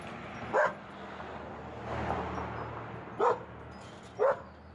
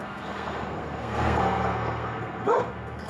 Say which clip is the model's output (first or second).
second